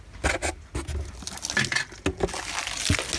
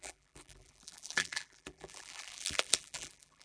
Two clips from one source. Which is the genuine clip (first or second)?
first